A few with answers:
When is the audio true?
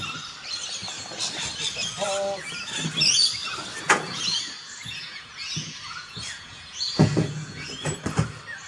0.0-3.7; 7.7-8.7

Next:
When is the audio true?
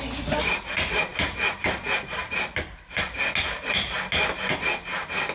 0.0-5.3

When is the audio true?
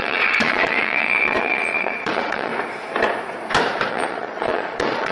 2.5-3.9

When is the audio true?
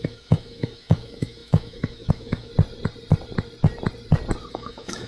2.5-4.5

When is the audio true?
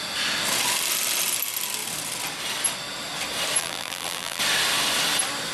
0.0-3.6; 4.4-5.5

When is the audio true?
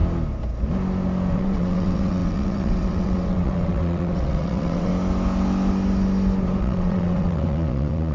0.0-1.3; 4.9-6.6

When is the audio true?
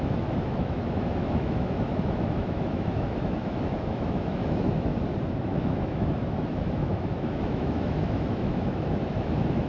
4.9-5.4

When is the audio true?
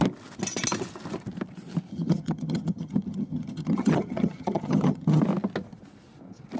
0.0-1.9; 5.2-6.6